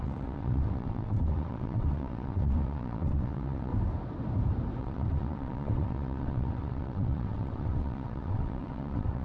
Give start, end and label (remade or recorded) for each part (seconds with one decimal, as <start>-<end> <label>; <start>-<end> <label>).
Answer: 0.0-3.7 remade; 3.7-4.8 recorded; 4.8-9.2 remade